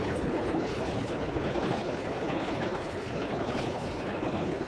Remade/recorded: remade